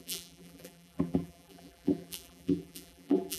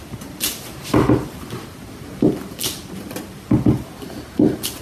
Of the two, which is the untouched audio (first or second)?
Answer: second